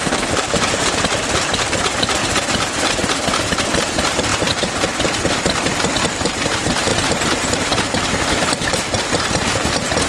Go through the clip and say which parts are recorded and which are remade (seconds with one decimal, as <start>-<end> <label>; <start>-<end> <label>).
0.0-2.2 remade; 2.2-3.7 recorded; 3.7-4.3 remade; 4.3-5.8 recorded; 5.8-10.1 remade